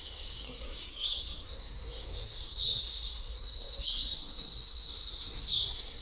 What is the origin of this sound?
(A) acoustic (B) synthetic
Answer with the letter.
B